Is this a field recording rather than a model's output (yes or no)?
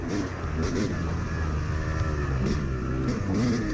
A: yes